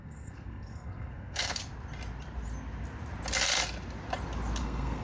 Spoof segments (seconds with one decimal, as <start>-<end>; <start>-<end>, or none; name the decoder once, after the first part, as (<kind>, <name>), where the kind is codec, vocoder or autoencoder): 0.0-1.6 (codec, SNAC); 4.6-5.0